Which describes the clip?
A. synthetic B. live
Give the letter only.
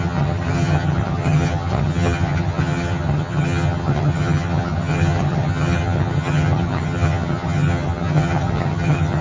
A